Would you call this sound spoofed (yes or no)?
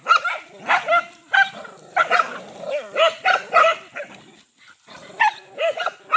no